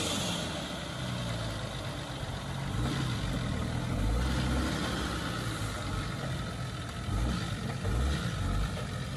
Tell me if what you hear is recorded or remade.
recorded